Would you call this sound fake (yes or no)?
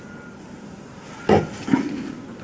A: no